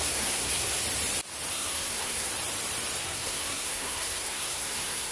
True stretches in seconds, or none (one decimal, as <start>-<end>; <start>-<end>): 0.8-1.5; 2.3-3.0